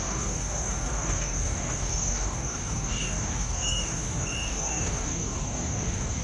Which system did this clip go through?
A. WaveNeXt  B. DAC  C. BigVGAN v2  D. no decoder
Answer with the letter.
B